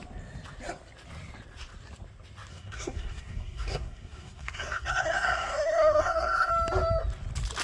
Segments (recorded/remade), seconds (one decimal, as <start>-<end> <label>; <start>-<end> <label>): 0.0-2.5 recorded; 2.5-6.5 remade; 6.5-7.6 recorded